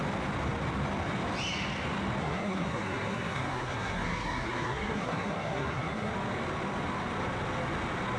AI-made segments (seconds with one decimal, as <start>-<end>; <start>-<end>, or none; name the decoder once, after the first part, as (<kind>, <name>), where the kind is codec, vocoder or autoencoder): 2.2-6.1 (codec, SNAC)